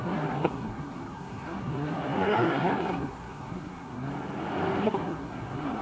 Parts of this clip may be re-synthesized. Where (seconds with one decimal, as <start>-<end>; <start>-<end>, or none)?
0.0-4.1; 4.8-5.8